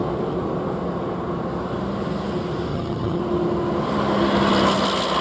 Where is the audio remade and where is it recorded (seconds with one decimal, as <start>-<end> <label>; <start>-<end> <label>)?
0.0-2.7 recorded; 2.7-3.2 remade; 3.2-5.2 recorded